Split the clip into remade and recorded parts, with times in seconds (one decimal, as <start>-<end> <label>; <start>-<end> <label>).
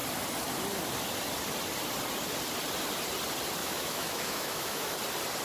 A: 0.0-3.6 recorded; 3.6-4.9 remade; 4.9-5.4 recorded